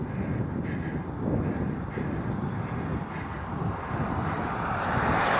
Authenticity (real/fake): real